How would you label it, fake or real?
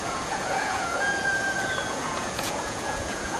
fake